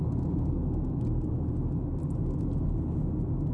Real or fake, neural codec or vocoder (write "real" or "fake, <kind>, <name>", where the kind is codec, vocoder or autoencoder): real